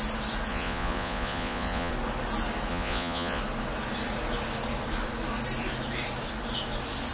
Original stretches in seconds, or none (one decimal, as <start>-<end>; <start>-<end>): 0.0-0.5; 1.9-2.7; 3.4-7.1